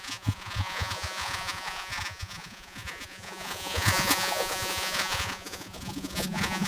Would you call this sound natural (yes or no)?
no